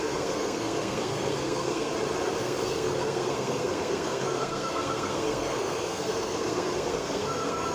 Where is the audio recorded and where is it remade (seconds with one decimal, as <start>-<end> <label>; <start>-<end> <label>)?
0.0-1.9 remade; 1.9-2.4 recorded; 2.4-7.7 remade